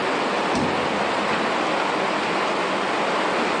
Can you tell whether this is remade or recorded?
recorded